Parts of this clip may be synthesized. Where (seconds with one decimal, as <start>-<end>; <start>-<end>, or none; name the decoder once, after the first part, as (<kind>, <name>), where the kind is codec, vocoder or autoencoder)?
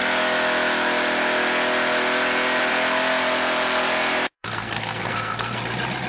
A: 4.3-5.6 (codec, SNAC)